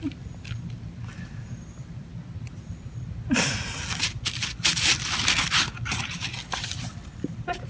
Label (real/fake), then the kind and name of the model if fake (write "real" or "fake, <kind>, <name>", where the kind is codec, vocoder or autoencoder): fake, vocoder, BigVGAN v2